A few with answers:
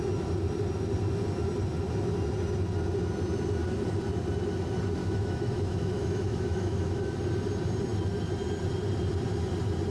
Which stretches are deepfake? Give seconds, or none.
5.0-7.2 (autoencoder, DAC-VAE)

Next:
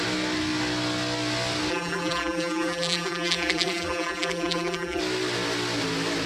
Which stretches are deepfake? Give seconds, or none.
1.7-5.0 (vocoder, BigVGAN v2)

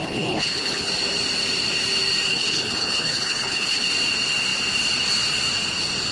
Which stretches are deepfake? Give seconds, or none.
0.0-0.9 (codec, HILCodec); 2.3-3.9

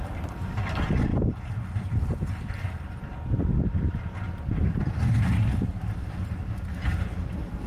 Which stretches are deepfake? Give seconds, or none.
5.7-6.2 (vocoder, BigVGAN v2); 6.7-7.3